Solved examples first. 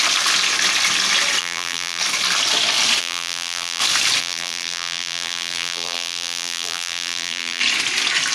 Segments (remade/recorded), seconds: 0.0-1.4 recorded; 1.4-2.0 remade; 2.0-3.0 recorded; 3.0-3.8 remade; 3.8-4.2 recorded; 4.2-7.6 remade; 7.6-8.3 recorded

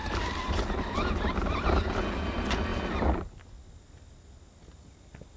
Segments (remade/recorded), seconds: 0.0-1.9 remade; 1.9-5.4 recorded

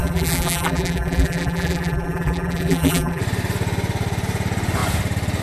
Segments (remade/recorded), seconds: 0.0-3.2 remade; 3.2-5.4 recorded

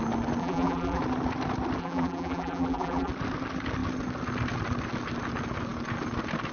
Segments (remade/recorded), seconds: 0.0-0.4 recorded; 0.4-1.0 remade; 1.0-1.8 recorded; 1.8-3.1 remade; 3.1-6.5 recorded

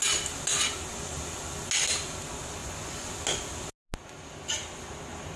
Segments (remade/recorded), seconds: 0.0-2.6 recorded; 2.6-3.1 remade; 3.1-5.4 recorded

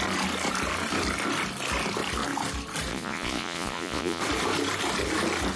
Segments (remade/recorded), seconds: 0.0-2.9 recorded; 2.9-4.2 remade; 4.2-5.6 recorded

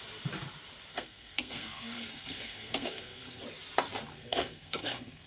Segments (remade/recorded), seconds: 0.0-0.9 recorded; 0.9-3.4 remade; 3.4-4.1 recorded; 4.1-5.3 remade

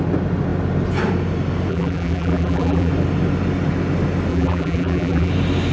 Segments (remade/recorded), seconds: 0.0-1.7 recorded; 1.7-2.9 remade; 2.9-4.3 recorded; 4.3-5.3 remade; 5.3-5.7 recorded